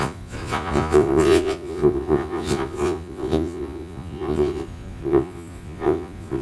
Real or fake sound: fake